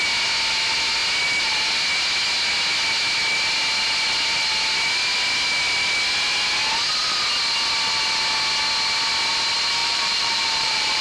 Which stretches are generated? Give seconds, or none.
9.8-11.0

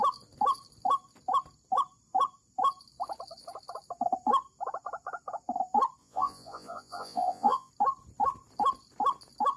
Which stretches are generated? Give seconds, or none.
6.0-7.7